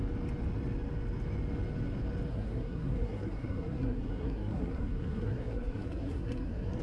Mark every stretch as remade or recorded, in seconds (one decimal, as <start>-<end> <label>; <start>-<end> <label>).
0.0-2.3 recorded; 2.3-6.8 remade

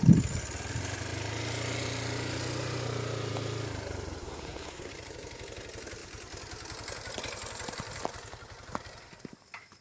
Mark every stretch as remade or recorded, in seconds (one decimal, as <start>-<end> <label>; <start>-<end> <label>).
0.0-4.2 recorded; 4.2-4.9 remade; 4.9-9.8 recorded

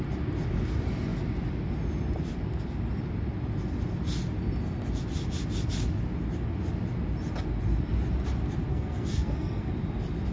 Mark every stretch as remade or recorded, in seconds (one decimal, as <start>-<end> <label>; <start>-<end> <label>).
0.0-8.7 recorded; 8.7-9.7 remade; 9.7-10.3 recorded

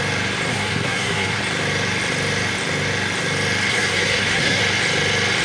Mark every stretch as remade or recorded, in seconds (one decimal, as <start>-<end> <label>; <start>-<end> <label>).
0.0-0.5 recorded; 0.5-1.4 remade; 1.4-3.7 recorded; 3.7-4.6 remade; 4.6-5.4 recorded

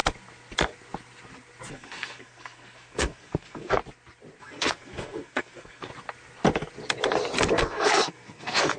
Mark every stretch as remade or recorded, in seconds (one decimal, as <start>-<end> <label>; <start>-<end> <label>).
0.0-1.7 recorded; 1.7-3.8 remade; 3.8-4.4 recorded; 4.4-5.9 remade; 5.9-7.5 recorded; 7.5-8.8 remade

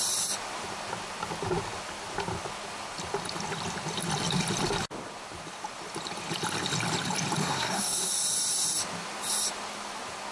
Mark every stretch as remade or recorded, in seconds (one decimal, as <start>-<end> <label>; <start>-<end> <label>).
0.0-7.4 recorded; 7.4-8.1 remade; 8.1-10.3 recorded